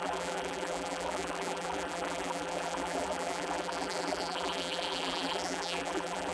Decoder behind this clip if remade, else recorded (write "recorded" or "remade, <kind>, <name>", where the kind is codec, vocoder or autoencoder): remade, vocoder, BigVGAN v2